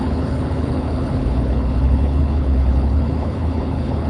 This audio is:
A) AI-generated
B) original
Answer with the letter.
A